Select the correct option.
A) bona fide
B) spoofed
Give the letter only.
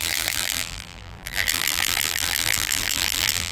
B